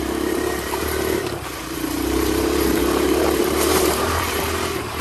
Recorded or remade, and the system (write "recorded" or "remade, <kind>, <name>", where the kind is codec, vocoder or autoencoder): remade, vocoder, BigVGAN v2